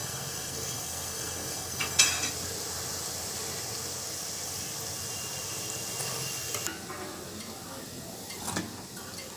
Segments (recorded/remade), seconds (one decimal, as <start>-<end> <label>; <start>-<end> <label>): 0.0-2.0 remade; 2.0-9.4 recorded